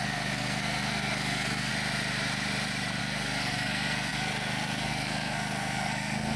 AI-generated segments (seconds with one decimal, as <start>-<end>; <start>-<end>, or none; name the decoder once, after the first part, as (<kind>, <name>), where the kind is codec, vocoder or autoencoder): 0.0-1.7 (codec, SNAC); 3.0-6.4